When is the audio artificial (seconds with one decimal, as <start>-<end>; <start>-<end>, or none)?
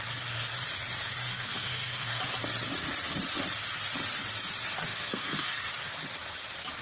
1.2-2.2; 4.8-5.7